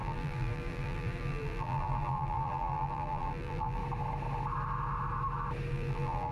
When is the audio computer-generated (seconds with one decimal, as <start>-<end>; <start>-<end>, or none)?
0.0-3.8; 5.7-6.3